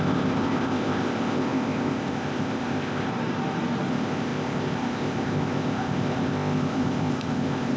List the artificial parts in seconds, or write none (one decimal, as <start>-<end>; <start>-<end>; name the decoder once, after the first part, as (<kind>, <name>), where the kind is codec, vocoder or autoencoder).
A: 0.0-3.1 (codec, ZipCodec); 3.9-7.8